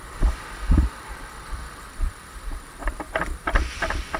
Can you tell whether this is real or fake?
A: fake